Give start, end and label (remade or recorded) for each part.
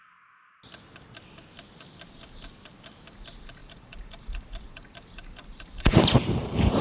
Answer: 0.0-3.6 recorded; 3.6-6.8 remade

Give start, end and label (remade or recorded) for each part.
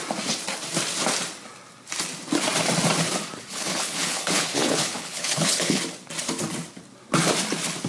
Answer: 0.0-3.5 recorded; 3.5-5.8 remade; 5.8-7.9 recorded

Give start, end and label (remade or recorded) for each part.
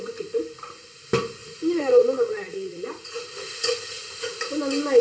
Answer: 0.0-1.4 recorded; 1.4-4.4 remade; 4.4-5.0 recorded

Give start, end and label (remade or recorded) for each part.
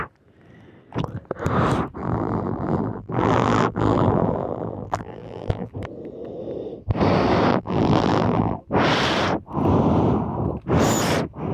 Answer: 0.0-2.0 recorded; 2.0-5.7 remade; 5.7-7.5 recorded; 7.5-8.6 remade; 8.6-11.5 recorded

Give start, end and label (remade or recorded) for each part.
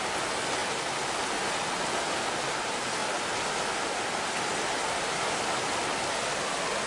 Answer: 0.0-0.6 recorded; 0.6-1.2 remade; 1.2-6.9 recorded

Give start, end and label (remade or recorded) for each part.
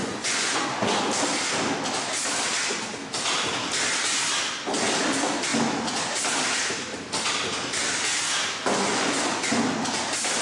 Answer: 0.0-0.6 remade; 0.6-8.9 recorded; 8.9-9.5 remade; 9.5-10.4 recorded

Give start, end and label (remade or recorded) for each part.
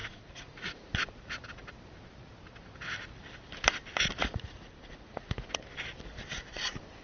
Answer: 0.0-0.9 remade; 0.9-4.2 recorded; 4.2-5.5 remade; 5.5-7.0 recorded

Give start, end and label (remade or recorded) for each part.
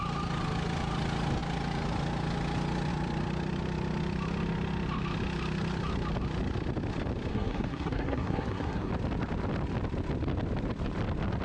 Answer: 0.0-7.3 recorded; 7.3-8.9 remade; 8.9-11.4 recorded